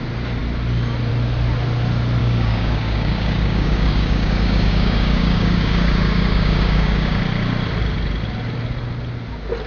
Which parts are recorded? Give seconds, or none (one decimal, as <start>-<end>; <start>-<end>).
0.0-2.2; 7.2-9.7